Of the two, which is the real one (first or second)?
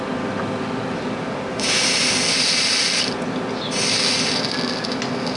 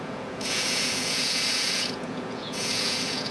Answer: first